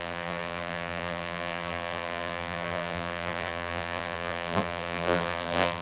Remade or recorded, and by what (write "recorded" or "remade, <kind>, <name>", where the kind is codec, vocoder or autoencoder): remade, vocoder, BigVGAN v2